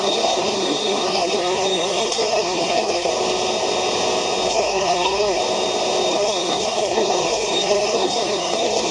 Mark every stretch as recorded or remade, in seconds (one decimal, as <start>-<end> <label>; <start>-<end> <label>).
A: 0.0-3.1 remade; 3.1-4.5 recorded; 4.5-5.4 remade; 5.4-6.1 recorded; 6.1-8.9 remade